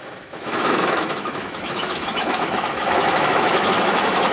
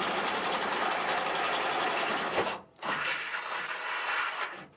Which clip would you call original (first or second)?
second